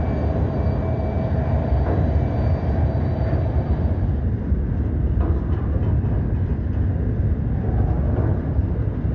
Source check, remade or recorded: recorded